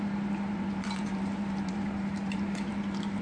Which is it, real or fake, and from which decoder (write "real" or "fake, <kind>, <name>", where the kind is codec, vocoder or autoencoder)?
fake, vocoder, BigVGAN v2